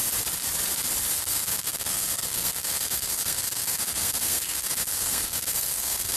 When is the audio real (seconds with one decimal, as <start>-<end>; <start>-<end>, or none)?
0.0-1.1